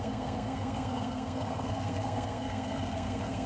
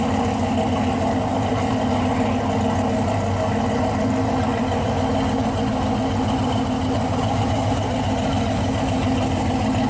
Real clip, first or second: second